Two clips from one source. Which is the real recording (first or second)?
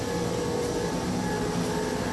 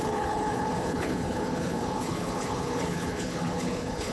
first